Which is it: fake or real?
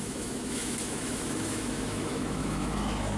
fake